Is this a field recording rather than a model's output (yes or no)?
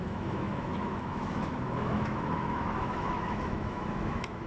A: no